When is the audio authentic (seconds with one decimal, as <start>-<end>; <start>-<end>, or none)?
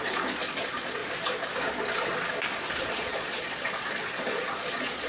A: 1.0-2.7